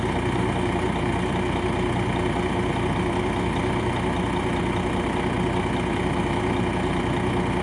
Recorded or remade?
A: recorded